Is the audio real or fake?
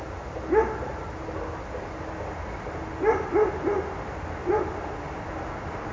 real